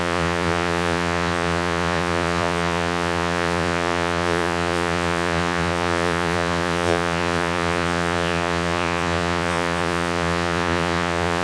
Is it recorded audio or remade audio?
remade